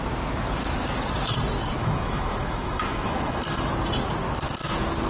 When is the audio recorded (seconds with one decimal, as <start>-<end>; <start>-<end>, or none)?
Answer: 0.0-1.8; 3.7-5.1